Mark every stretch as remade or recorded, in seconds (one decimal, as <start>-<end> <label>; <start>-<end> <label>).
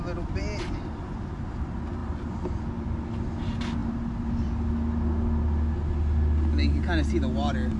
0.0-2.0 recorded; 2.0-2.6 remade; 2.6-7.8 recorded